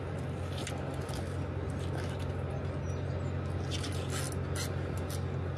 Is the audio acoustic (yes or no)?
yes